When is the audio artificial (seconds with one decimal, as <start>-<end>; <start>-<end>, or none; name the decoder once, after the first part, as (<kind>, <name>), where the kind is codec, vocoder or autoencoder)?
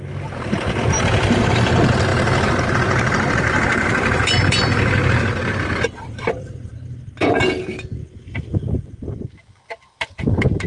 2.1-6.7 (vocoder, BigVGAN v2)